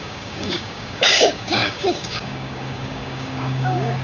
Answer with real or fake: fake